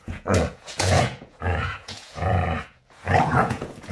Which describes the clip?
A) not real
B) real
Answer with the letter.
A